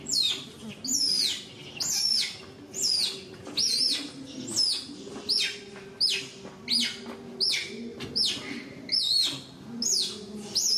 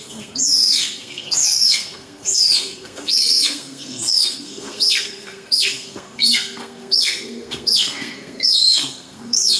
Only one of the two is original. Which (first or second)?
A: first